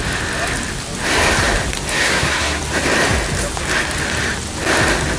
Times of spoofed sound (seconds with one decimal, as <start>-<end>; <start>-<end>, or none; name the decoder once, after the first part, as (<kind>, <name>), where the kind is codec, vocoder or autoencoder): 1.9-2.6 (codec, SNAC)